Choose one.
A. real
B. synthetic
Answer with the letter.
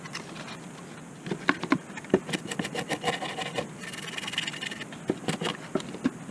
A